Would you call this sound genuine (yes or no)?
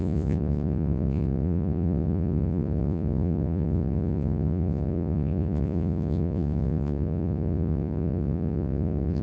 no